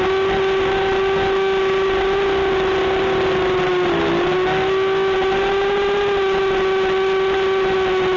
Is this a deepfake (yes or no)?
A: no